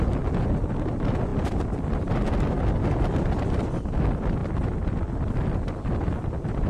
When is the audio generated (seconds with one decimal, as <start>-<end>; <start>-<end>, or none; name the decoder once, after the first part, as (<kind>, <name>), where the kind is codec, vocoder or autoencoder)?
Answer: none